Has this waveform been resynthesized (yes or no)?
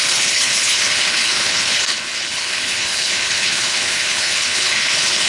yes